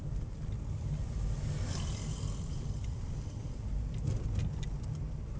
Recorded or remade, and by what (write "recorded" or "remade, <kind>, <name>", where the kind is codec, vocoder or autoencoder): recorded